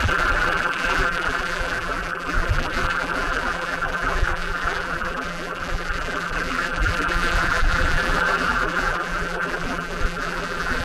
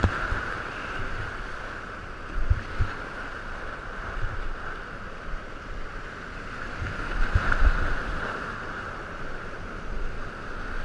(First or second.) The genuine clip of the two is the second